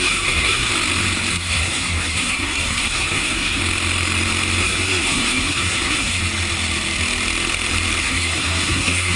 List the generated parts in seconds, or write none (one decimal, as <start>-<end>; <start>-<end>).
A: 0.0-0.7; 1.3-3.6; 4.6-6.2; 8.0-9.2